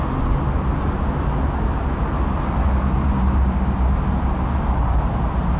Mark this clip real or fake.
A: real